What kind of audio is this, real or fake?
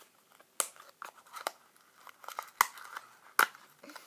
real